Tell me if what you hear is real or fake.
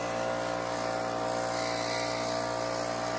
real